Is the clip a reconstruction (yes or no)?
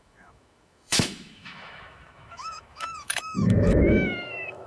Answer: yes